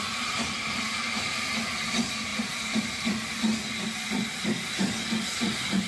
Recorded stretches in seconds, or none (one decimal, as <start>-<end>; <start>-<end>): 0.0-2.3; 3.0-5.9